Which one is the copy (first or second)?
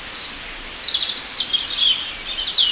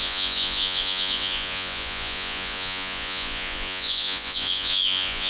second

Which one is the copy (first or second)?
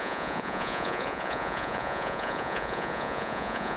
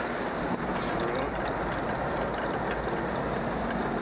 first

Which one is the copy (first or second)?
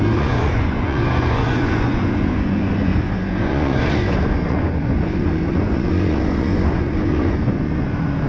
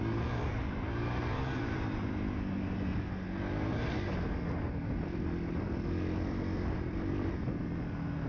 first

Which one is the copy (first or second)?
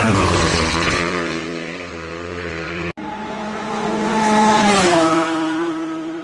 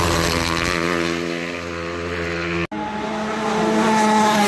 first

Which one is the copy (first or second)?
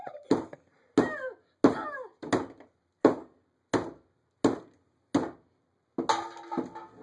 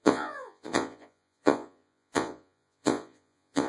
second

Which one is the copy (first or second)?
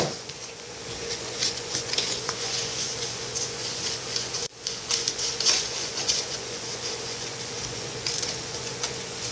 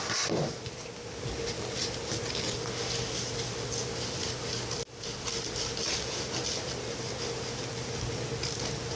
first